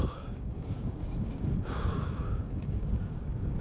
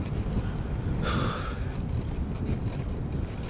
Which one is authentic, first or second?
second